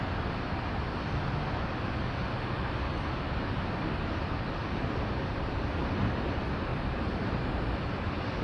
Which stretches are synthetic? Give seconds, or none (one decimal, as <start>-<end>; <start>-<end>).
6.7-8.4